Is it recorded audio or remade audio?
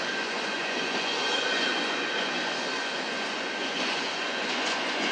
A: remade